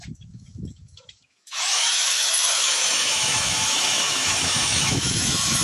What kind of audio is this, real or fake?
fake